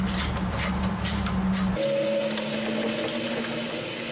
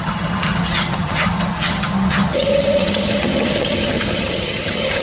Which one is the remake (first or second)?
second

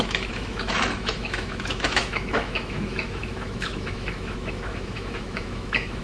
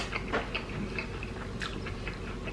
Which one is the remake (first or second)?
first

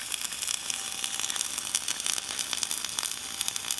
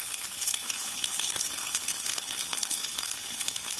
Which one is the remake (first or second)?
second